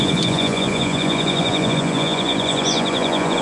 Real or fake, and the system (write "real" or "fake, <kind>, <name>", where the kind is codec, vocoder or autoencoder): fake, vocoder, Vocos